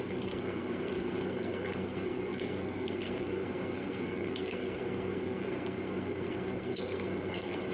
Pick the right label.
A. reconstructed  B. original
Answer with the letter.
A